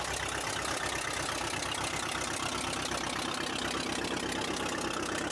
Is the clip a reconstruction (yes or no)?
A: no